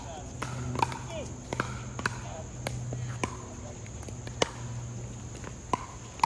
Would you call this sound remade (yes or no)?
no